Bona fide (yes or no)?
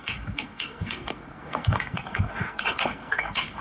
no